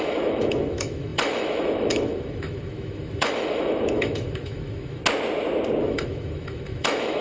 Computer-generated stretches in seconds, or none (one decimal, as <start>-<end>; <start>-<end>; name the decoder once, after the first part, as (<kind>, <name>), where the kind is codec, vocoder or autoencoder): 0.0-5.0 (autoencoder, DAC-VAE); 5.8-7.2